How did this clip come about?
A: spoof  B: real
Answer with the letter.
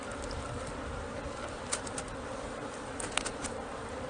B